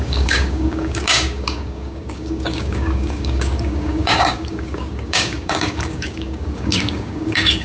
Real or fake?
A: fake